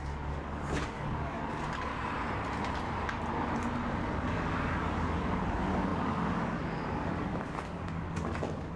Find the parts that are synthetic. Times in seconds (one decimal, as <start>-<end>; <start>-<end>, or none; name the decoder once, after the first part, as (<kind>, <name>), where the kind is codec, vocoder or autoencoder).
0.0-1.9 (codec, DAC); 4.0-8.8